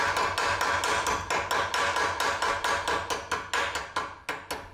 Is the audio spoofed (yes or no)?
no